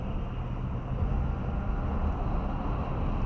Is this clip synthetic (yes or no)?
no